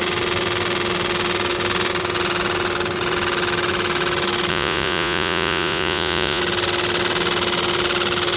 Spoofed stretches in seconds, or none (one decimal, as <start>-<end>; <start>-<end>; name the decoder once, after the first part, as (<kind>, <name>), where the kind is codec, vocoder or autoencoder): 4.5-6.4 (vocoder, Vocos)